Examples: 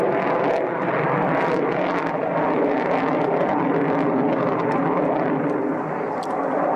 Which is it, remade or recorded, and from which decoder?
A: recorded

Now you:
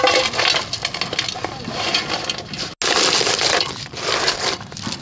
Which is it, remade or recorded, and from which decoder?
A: recorded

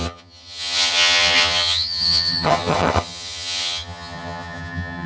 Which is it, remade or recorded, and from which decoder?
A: remade, vocoder, HiFi-GAN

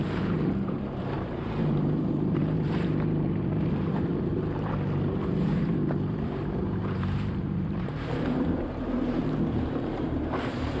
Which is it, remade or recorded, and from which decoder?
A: remade, vocoder, BigVGAN v2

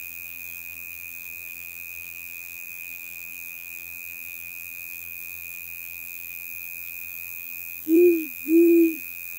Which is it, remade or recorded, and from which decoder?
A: remade, vocoder, BigVGAN v2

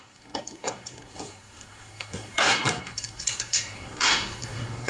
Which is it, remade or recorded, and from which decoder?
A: remade, codec, SNAC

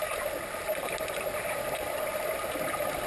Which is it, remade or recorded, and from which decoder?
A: recorded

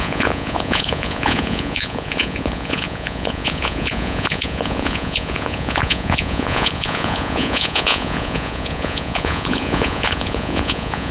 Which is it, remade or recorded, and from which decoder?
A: remade, vocoder, Vocos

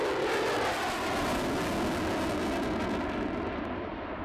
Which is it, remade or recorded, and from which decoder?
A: recorded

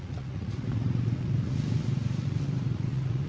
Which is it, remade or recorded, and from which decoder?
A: remade, vocoder, Vocos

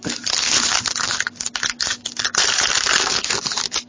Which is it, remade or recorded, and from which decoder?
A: recorded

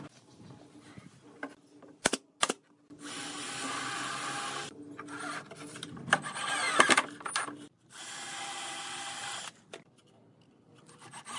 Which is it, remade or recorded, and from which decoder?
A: recorded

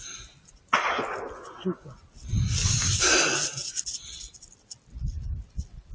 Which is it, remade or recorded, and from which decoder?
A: recorded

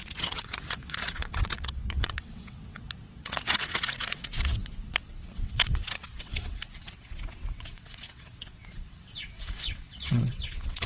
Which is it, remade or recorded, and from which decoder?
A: remade, vocoder, WaveNeXt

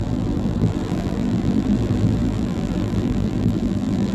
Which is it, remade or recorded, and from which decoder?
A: remade, vocoder, BigVGAN v2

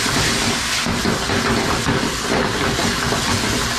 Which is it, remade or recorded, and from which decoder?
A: recorded